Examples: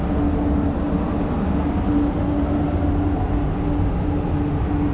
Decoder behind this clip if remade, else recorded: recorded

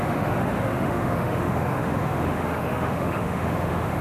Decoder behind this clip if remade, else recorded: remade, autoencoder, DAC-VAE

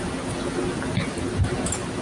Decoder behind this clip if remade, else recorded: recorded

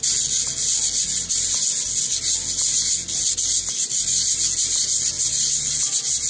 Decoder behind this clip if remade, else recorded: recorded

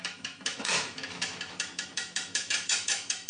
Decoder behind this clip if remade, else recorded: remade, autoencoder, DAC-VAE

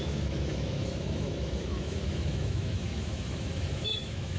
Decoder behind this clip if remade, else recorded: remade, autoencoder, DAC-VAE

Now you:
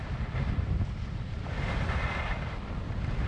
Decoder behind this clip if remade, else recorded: recorded